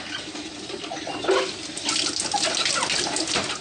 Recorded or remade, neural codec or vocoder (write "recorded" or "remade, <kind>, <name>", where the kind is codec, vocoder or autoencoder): recorded